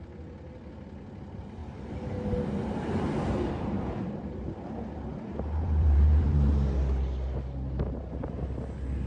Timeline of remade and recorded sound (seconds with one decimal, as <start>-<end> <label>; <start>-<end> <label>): 0.0-5.1 recorded; 5.1-6.5 remade; 6.5-9.1 recorded